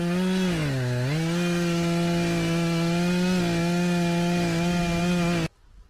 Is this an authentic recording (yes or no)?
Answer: yes